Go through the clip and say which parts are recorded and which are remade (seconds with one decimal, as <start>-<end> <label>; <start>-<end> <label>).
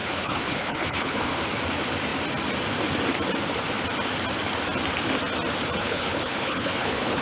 0.0-1.4 remade; 1.4-5.8 recorded; 5.8-7.2 remade